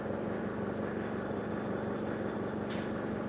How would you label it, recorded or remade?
recorded